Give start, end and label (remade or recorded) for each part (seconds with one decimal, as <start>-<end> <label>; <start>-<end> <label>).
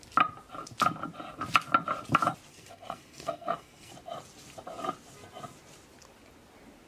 0.0-2.5 recorded; 2.5-3.9 remade; 3.9-6.9 recorded